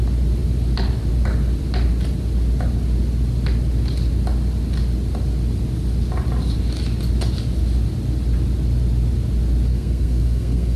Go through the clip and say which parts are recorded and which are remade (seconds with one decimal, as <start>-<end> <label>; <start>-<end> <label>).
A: 0.0-9.7 recorded; 9.7-10.8 remade